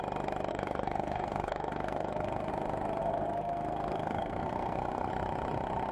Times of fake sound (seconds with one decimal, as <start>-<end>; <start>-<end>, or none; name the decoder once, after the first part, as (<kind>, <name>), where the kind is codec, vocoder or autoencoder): 0.5-2.5 (codec, SNAC); 3.0-5.1